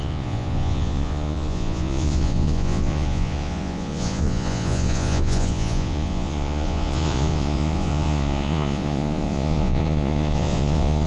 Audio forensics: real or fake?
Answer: fake